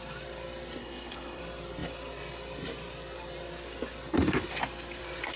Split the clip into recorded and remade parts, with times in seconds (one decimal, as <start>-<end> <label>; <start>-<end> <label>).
0.0-0.8 recorded; 0.8-1.4 remade; 1.4-5.4 recorded